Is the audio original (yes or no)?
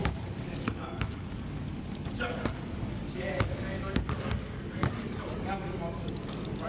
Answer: no